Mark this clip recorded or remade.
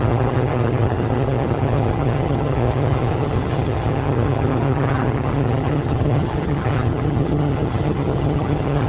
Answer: remade